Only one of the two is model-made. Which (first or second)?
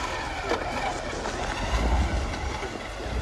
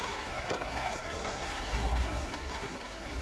second